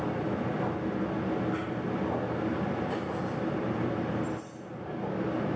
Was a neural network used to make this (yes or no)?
no